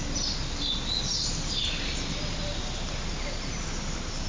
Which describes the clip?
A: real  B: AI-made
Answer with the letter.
A